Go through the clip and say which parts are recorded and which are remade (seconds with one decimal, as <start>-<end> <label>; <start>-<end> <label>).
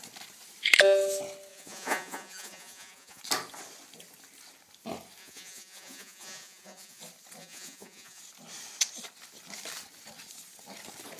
0.0-1.5 recorded; 1.5-3.2 remade; 3.2-5.2 recorded; 5.2-7.0 remade; 7.0-7.4 recorded; 7.4-8.2 remade; 8.2-11.2 recorded